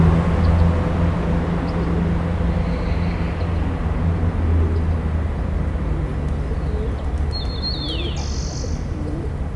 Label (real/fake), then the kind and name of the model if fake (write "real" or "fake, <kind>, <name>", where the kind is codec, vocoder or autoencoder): real